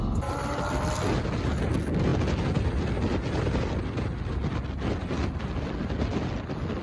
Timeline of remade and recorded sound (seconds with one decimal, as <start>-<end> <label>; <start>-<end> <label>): 0.0-6.8 recorded